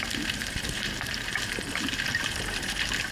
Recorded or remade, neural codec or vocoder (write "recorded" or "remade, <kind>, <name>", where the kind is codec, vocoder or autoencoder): remade, vocoder, BigVGAN v2